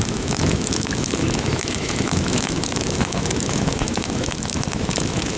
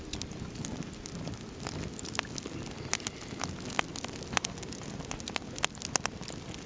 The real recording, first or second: second